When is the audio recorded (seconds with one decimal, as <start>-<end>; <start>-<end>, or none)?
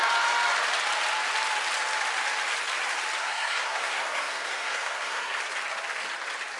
0.0-3.2; 5.4-6.6